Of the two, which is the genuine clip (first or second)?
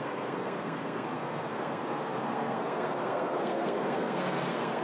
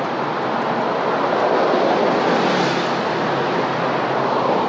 second